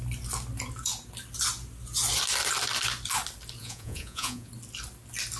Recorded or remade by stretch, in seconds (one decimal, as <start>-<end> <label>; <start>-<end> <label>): 0.0-3.6 recorded; 3.6-4.5 remade; 4.5-5.4 recorded